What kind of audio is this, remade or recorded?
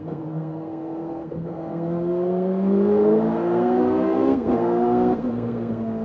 remade